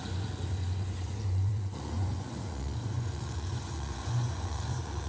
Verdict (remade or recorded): remade